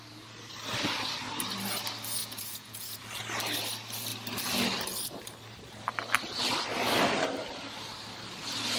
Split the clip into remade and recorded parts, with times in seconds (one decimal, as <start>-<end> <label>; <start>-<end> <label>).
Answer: 0.0-2.2 recorded; 2.2-3.0 remade; 3.0-8.8 recorded